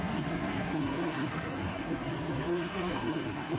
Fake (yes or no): yes